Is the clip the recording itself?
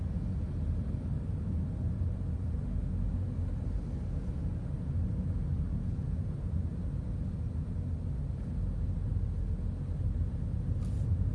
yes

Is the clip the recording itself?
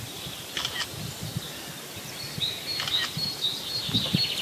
yes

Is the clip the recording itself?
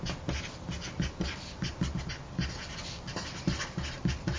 yes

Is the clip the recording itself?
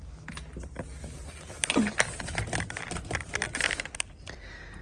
yes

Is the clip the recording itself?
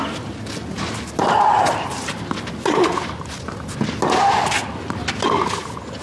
yes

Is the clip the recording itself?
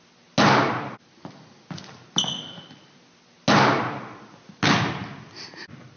yes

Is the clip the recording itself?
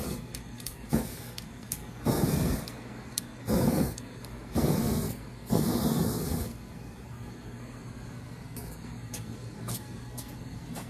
no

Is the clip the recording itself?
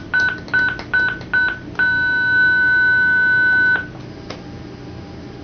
yes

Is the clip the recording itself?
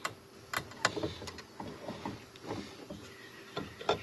yes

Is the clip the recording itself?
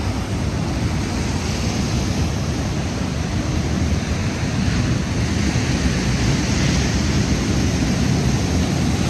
yes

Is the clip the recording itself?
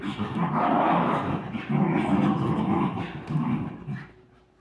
yes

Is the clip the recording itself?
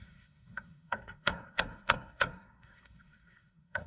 no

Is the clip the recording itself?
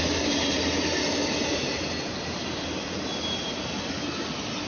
yes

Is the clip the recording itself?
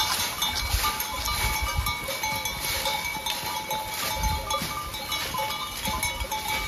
yes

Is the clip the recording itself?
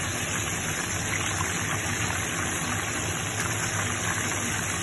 yes